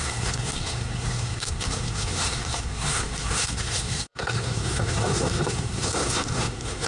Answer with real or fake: fake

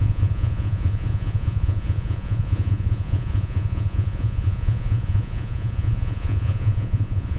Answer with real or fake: fake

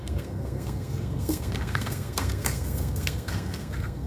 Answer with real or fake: fake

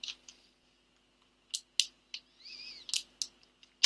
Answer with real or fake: real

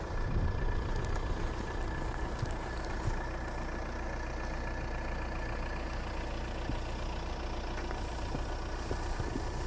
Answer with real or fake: real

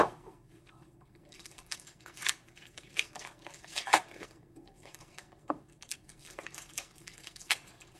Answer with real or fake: fake